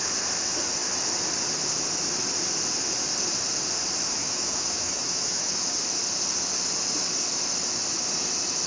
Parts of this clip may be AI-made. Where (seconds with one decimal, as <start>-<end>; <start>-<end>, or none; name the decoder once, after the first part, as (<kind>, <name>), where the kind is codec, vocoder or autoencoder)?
4.2-5.6 (autoencoder, DAC-VAE)